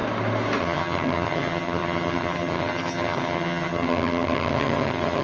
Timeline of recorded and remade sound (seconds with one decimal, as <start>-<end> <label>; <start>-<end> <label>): 0.0-0.6 recorded; 0.6-5.2 remade